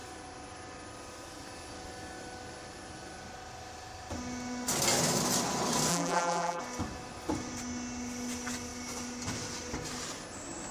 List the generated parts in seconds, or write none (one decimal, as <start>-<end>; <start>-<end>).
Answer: 5.9-6.6